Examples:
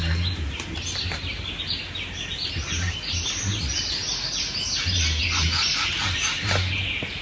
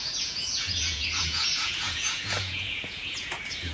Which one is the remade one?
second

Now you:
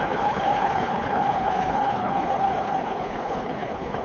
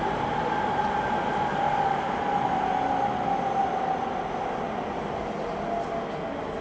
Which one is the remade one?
first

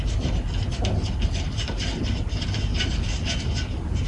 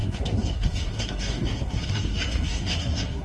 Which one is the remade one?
second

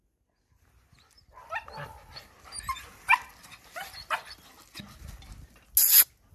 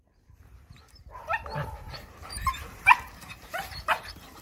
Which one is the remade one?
second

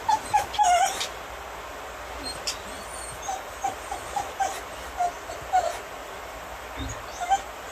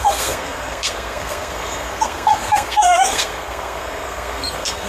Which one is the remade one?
second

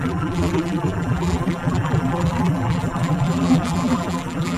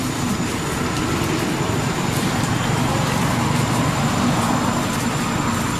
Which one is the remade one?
first